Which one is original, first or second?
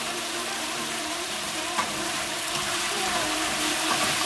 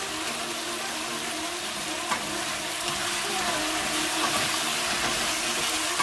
second